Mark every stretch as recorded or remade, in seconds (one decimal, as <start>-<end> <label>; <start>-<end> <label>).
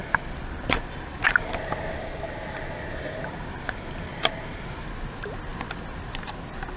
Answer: 0.0-6.8 recorded